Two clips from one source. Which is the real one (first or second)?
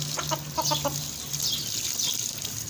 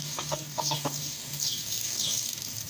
first